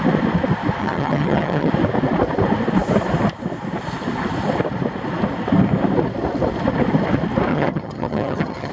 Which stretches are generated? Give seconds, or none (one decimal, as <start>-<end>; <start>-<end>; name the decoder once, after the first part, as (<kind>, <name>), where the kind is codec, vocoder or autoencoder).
0.8-1.7 (vocoder, HiFi-GAN); 7.5-8.7